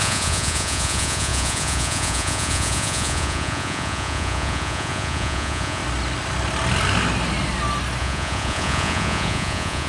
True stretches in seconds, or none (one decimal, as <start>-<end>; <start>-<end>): 5.8-8.0